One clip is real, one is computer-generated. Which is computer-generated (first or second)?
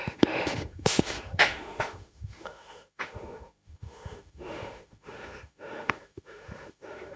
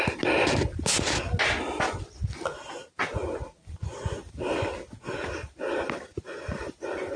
first